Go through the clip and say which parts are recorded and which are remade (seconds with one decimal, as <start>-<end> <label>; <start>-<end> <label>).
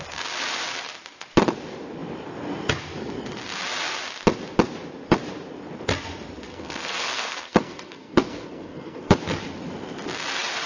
0.0-6.5 recorded; 6.5-9.2 remade; 9.2-10.7 recorded